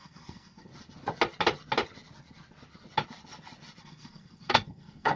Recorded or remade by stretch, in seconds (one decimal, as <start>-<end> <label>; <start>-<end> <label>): 0.0-0.7 remade; 0.7-3.8 recorded; 3.8-5.2 remade

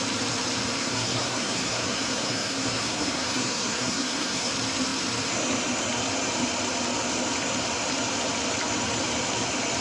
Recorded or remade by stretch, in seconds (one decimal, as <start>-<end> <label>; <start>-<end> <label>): 0.0-0.8 recorded; 0.8-4.5 remade; 4.5-9.8 recorded

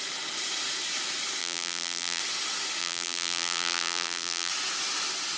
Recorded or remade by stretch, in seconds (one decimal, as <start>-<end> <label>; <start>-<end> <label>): 0.0-1.4 recorded; 1.4-2.2 remade; 2.2-2.8 recorded; 2.8-4.5 remade; 4.5-5.4 recorded

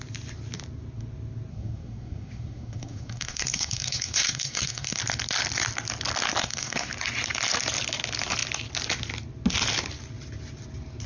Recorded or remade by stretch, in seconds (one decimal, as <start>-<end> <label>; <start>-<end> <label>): 0.0-1.5 recorded; 1.5-5.0 remade; 5.0-6.4 recorded; 6.4-6.9 remade; 6.9-11.1 recorded